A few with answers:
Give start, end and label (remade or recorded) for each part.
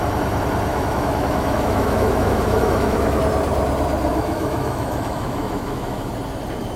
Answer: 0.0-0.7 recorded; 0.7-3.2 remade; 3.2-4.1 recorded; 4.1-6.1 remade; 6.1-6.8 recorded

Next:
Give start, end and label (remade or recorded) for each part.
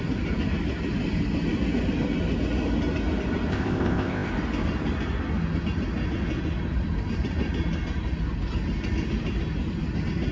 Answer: 0.0-3.5 recorded; 3.5-4.3 remade; 4.3-10.3 recorded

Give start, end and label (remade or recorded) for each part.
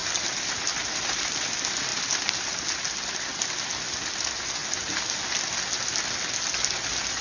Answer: 0.0-7.2 recorded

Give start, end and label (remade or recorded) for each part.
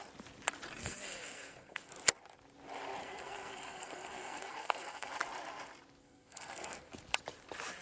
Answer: 0.0-0.8 recorded; 0.8-1.9 remade; 1.9-3.0 recorded; 3.0-5.1 remade; 5.1-6.0 recorded; 6.0-6.9 remade; 6.9-7.8 recorded